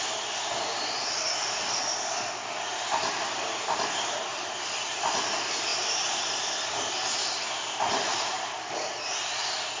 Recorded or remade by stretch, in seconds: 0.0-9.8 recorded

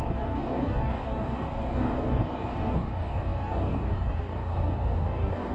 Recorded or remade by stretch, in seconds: 0.0-5.5 remade

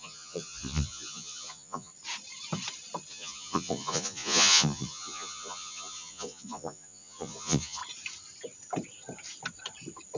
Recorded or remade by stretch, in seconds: 0.0-1.9 remade; 1.9-3.1 recorded; 3.1-7.8 remade; 7.8-10.2 recorded

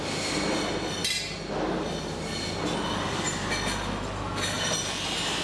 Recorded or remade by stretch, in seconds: 0.0-5.4 recorded

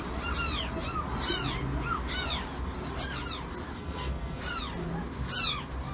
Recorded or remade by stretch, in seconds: 0.0-3.7 recorded; 3.7-4.4 remade; 4.4-5.9 recorded

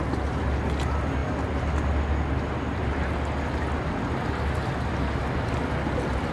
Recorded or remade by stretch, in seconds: 0.0-6.3 recorded